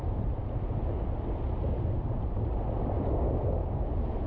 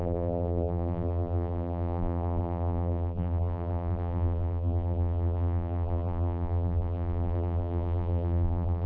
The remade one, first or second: second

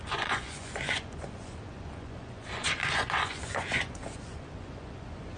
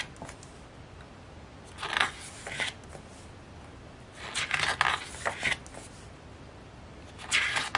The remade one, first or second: first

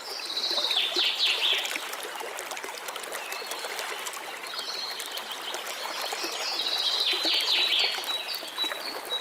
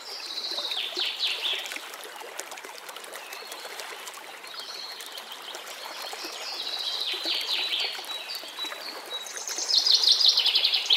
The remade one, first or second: second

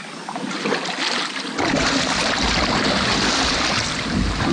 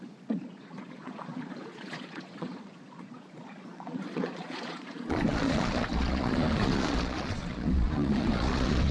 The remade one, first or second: second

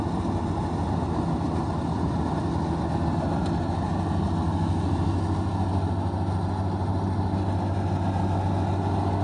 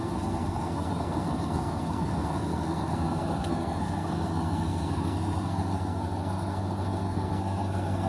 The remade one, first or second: second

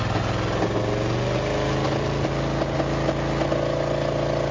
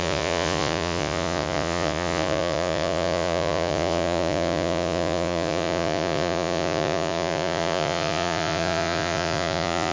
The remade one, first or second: second